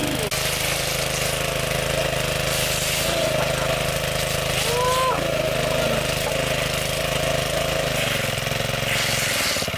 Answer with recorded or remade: recorded